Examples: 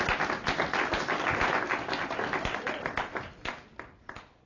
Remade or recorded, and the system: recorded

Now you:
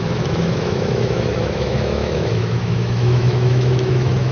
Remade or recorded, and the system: remade, autoencoder, DAC-VAE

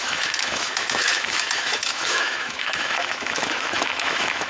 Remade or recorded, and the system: remade, autoencoder, DAC-VAE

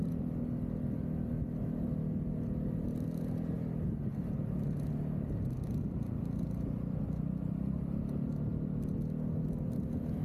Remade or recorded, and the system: recorded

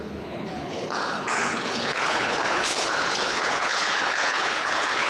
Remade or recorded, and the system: remade, codec, HILCodec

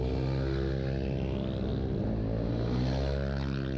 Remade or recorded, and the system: recorded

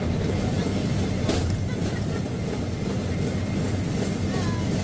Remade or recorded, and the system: recorded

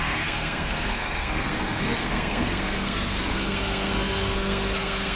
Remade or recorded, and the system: remade, codec, SNAC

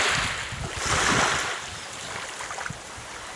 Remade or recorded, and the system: recorded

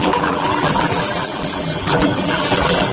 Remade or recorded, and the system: remade, vocoder, BigVGAN v2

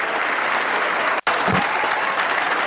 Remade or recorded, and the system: recorded